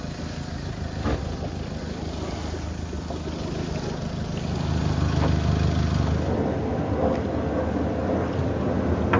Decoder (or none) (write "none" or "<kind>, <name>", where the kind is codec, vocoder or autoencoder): none